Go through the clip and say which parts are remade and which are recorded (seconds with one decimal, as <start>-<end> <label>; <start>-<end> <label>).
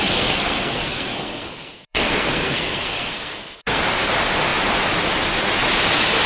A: 0.0-3.8 remade; 3.8-6.3 recorded